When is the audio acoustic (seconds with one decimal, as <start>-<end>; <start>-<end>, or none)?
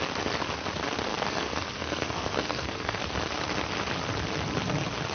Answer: 0.0-1.1; 3.0-5.1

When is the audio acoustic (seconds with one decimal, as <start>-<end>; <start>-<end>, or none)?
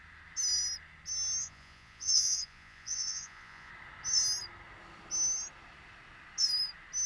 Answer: 0.0-1.4; 3.7-7.1